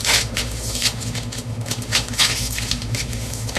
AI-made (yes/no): yes